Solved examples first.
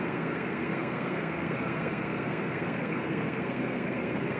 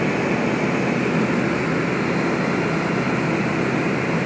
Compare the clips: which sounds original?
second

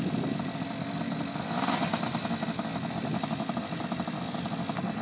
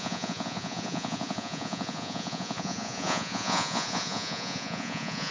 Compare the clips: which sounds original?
first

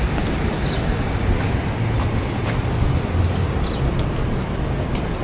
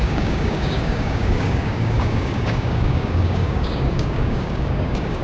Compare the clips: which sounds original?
first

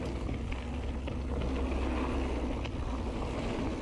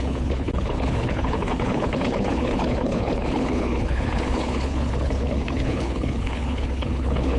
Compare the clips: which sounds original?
first